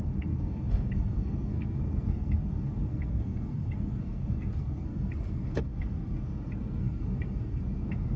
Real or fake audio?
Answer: fake